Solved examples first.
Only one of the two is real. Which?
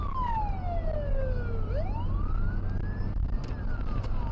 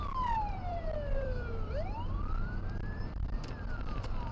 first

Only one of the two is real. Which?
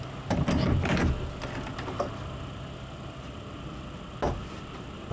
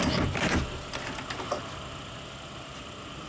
first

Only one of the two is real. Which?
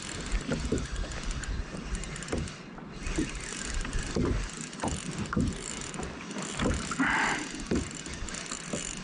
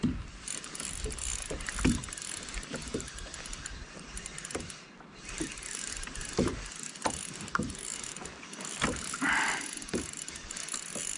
first